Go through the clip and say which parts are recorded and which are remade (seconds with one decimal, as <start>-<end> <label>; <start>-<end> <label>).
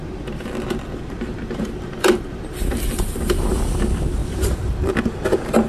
0.0-3.4 remade; 3.4-4.2 recorded; 4.2-5.0 remade; 5.0-5.7 recorded